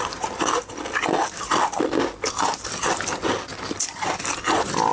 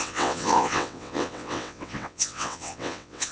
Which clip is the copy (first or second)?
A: second